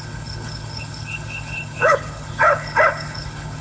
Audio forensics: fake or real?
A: fake